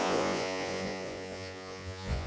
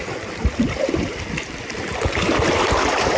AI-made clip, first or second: first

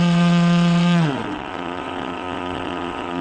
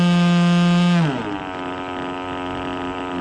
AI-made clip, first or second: first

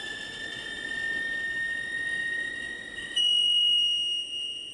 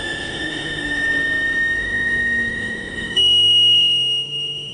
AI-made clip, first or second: second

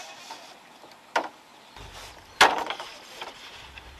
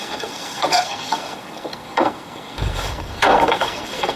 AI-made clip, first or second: second